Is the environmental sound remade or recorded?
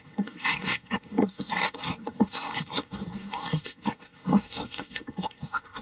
remade